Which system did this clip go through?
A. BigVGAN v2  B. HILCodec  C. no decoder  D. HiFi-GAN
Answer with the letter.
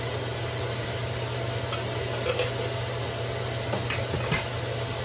C